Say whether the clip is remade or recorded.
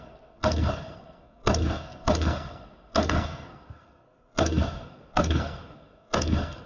remade